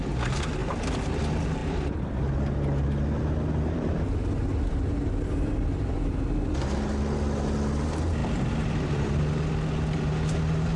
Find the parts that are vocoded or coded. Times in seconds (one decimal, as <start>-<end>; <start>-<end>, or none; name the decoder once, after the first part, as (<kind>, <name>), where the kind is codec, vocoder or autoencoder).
8.2-9.2 (vocoder, BigVGAN v2)